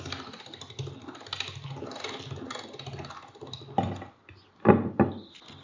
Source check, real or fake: real